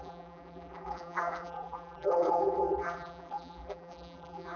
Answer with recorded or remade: remade